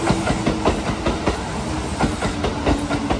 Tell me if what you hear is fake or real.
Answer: real